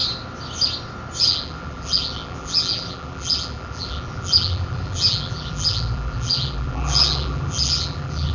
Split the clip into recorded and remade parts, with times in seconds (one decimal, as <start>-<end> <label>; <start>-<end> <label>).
0.0-1.2 recorded; 1.2-8.3 remade